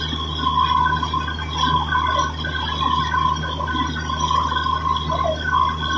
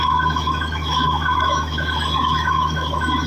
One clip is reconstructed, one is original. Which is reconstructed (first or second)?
second